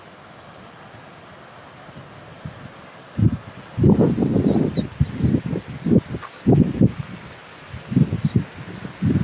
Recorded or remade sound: recorded